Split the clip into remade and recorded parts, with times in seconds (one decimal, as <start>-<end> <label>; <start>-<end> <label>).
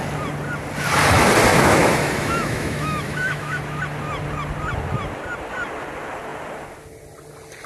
0.0-1.5 recorded; 1.5-3.6 remade; 3.6-7.7 recorded